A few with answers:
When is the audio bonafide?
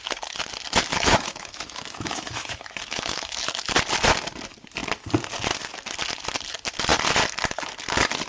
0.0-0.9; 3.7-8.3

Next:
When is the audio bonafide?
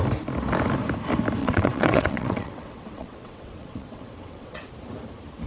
0.0-1.4; 4.7-5.5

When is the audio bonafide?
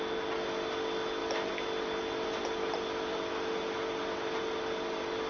0.0-1.2; 4.4-5.3